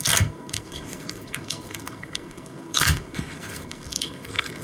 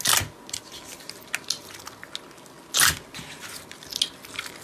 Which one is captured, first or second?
second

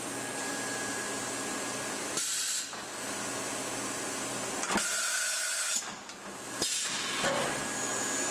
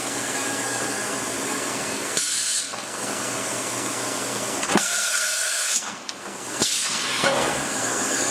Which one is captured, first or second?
first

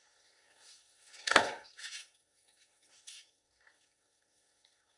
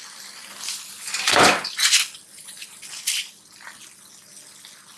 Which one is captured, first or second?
second